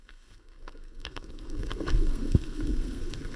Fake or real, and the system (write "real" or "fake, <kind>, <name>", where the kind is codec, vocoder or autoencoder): fake, codec, SNAC